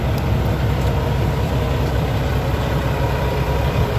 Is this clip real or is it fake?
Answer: fake